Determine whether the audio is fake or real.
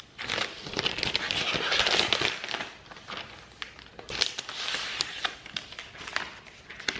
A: real